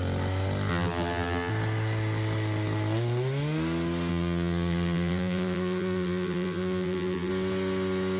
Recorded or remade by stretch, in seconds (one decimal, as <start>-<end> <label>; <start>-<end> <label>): 0.0-0.7 recorded; 0.7-1.5 remade; 1.5-4.1 recorded; 4.1-7.3 remade; 7.3-8.2 recorded